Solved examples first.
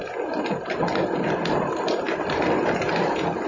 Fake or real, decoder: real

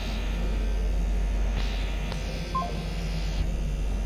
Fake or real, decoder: real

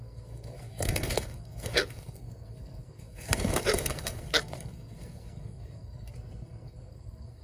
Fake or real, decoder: fake, codec, SNAC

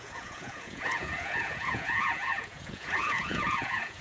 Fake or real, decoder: fake, vocoder, Vocos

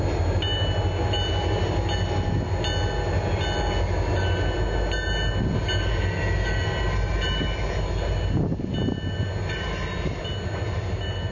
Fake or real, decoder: real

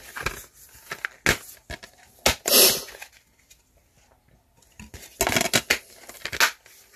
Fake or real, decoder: real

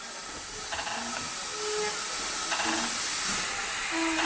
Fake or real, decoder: real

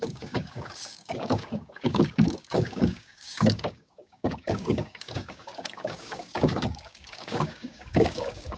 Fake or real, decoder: fake, codec, DAC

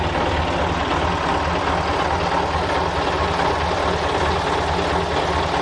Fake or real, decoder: real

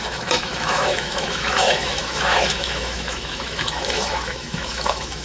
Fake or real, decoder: fake, autoencoder, DAC-VAE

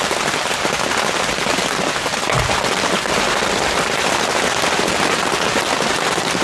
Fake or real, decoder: real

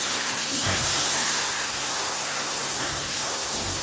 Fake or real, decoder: fake, codec, SNAC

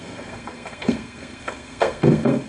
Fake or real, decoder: fake, codec, SNAC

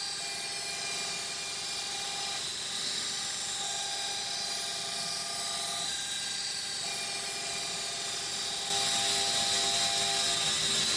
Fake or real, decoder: real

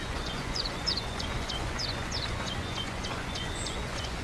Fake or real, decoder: fake, vocoder, Vocos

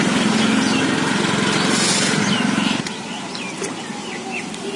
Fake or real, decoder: real